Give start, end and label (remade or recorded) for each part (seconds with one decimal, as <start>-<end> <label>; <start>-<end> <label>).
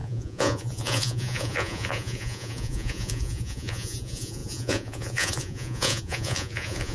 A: 0.0-6.9 remade